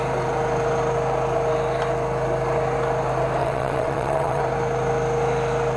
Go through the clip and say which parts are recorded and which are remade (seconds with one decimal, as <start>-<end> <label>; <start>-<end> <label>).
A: 0.0-3.4 recorded; 3.4-4.4 remade; 4.4-5.8 recorded